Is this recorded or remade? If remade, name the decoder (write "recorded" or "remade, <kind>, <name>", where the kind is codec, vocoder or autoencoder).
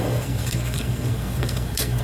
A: remade, codec, SNAC